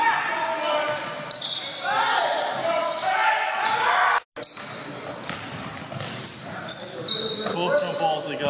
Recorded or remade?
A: recorded